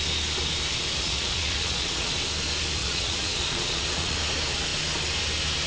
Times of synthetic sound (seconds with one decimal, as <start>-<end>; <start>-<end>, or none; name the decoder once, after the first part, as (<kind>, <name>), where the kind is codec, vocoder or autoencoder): 1.0-2.1 (vocoder, Vocos); 2.8-4.2